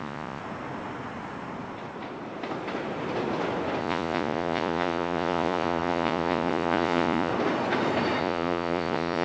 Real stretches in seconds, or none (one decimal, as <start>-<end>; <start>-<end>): 0.4-3.8; 7.3-8.2